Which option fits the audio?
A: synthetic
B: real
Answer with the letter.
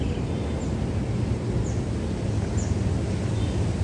B